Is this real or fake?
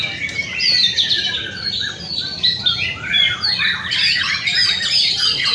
real